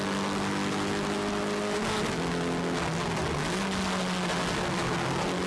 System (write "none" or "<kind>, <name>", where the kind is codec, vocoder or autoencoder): none